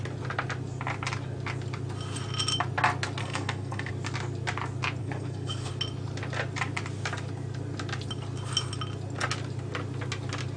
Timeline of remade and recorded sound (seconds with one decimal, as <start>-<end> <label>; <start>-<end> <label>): 0.0-3.2 recorded; 3.2-3.9 remade; 3.9-5.0 recorded; 5.0-5.7 remade; 5.7-10.6 recorded